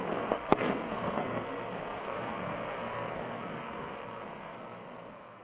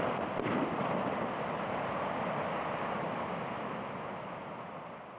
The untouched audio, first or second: second